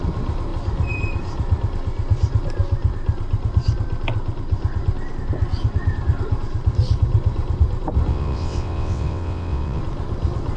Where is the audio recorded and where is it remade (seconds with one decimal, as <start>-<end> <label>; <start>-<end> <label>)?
0.0-8.1 recorded; 8.1-9.8 remade; 9.8-10.6 recorded